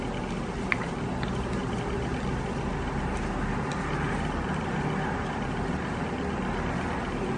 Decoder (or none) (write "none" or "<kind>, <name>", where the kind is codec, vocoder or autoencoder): none